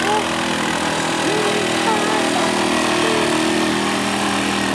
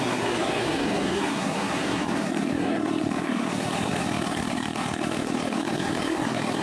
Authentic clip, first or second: first